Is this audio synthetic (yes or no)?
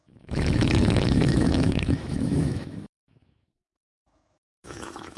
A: yes